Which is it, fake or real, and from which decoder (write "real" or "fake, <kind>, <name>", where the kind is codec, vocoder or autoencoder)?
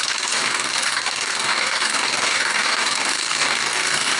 fake, codec, DAC